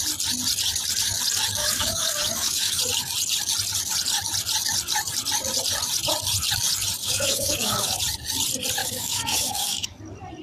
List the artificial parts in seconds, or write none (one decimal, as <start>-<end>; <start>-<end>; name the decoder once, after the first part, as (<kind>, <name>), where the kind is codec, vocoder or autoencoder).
1.6-2.8 (codec, DAC); 7.0-8.0; 8.8-10.0